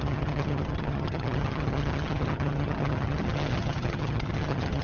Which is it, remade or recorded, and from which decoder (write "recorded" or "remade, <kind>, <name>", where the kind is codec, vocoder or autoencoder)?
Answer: remade, vocoder, HiFi-GAN